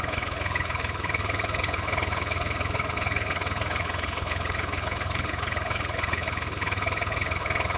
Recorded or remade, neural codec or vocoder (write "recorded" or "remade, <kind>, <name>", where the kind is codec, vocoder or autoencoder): remade, codec, HILCodec